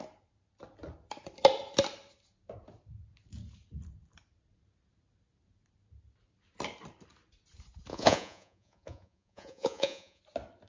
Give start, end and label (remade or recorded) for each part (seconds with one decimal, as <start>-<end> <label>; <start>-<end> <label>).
0.0-7.9 recorded; 7.9-10.2 remade; 10.2-10.7 recorded